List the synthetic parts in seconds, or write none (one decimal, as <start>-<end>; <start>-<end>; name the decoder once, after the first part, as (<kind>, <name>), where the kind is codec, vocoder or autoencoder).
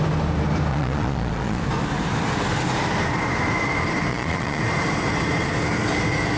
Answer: 0.7-1.6 (vocoder, Vocos); 4.1-4.6